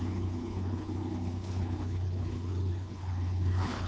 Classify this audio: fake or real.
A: fake